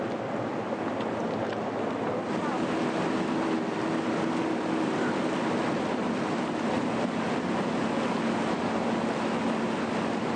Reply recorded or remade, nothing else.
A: recorded